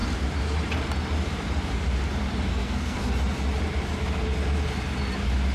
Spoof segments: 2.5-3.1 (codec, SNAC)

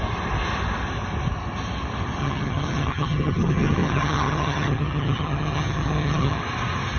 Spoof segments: 2.2-6.4 (vocoder, HiFi-GAN)

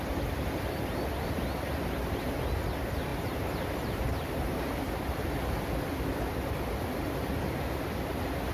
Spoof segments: 3.1-5.6 (vocoder, BigVGAN v2)

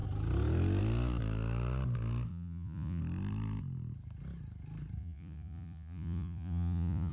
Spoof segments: 2.3-3.0 (vocoder, Vocos); 5.0-7.1

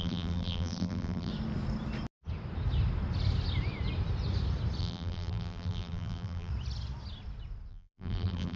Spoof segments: 0.0-1.3 (vocoder, BigVGAN v2); 4.8-6.5; 7.7-8.6

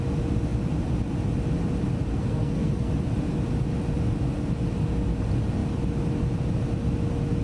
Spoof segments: 2.1-2.9 (codec, SNAC)

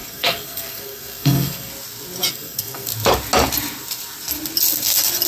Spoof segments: 0.0-1.7 (codec, SNAC); 2.3-2.9

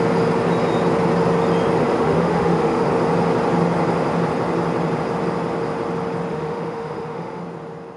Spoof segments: 1.8-2.9 (autoencoder, DAC-VAE); 6.3-7.4